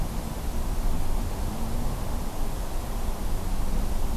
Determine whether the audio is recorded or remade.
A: recorded